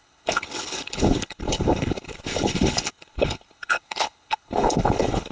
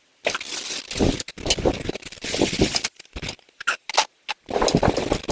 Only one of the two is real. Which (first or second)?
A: second